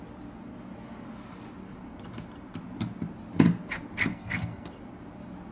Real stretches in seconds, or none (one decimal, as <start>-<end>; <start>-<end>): 0.0-4.1; 4.7-5.5